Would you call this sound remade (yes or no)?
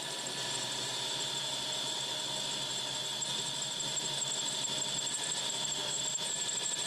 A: no